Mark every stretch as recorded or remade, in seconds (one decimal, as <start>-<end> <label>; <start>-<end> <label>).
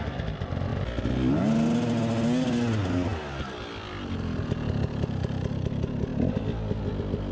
0.0-7.3 recorded